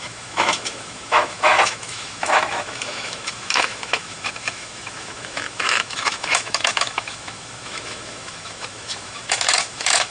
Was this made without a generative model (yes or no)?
no